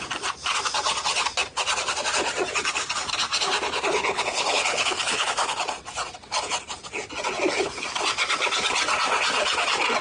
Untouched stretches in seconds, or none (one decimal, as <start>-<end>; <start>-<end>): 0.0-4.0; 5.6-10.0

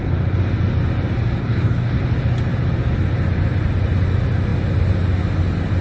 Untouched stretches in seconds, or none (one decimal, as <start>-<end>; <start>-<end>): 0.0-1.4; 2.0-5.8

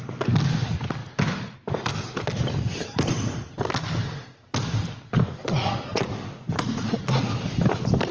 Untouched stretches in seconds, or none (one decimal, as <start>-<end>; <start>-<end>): 0.0-5.9; 7.5-8.1

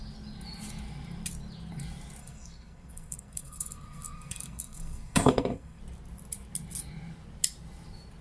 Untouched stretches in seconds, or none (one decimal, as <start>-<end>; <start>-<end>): 0.0-2.2; 5.8-8.2

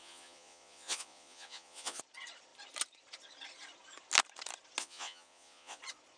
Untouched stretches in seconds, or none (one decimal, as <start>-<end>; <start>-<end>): 2.0-4.8; 5.8-6.2